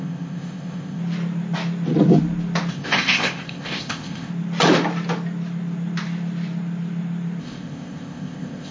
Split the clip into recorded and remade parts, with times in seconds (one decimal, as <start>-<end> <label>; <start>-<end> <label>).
0.0-1.0 remade; 1.0-2.7 recorded; 2.7-4.3 remade; 4.3-7.4 recorded; 7.4-8.7 remade